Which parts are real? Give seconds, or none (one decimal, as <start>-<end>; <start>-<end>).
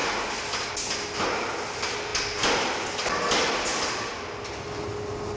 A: 0.0-5.4